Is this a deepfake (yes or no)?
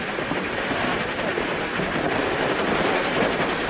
no